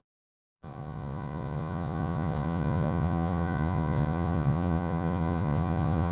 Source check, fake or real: fake